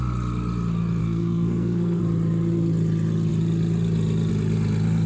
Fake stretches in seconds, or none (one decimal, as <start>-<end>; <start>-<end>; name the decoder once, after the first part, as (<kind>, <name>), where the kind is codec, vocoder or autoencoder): 1.0-2.0 (codec, SNAC)